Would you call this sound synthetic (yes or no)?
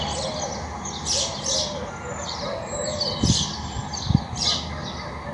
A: no